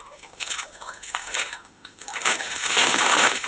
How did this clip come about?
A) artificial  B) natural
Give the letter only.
A